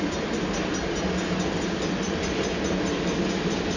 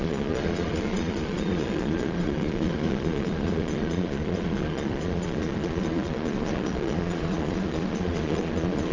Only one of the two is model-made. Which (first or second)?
second